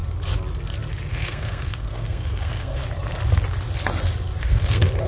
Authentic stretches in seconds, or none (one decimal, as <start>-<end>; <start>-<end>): 0.0-1.1; 2.8-4.4